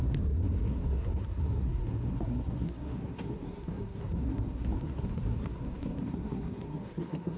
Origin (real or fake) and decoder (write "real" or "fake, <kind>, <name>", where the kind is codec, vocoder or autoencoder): fake, codec, SNAC